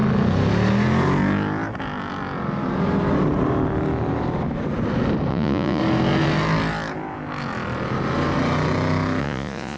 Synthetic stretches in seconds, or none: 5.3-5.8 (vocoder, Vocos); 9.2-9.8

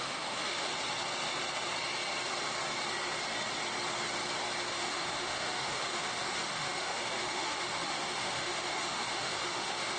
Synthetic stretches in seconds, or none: 0.0-0.7 (autoencoder, DAC-VAE); 4.7-10.0

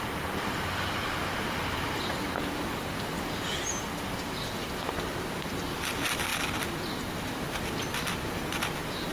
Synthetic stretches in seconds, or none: none

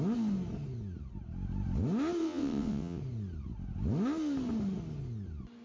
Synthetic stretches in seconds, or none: 2.2-3.0 (vocoder, WaveNeXt)